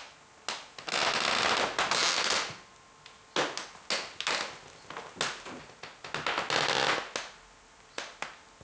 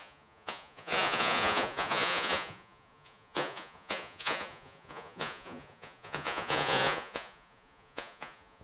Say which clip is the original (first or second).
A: first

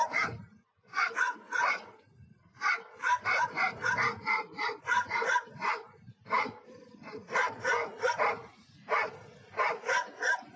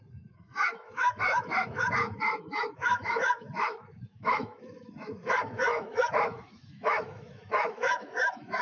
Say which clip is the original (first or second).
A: first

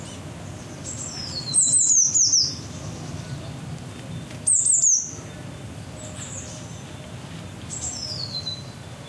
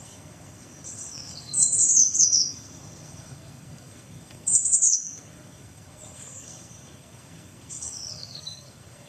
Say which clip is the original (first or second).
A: first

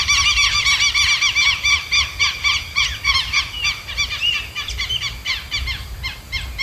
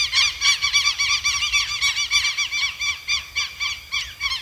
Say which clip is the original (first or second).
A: second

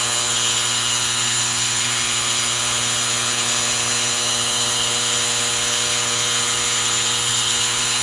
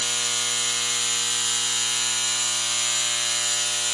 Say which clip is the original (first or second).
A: second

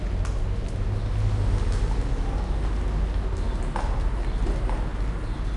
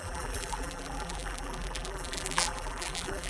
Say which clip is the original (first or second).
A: first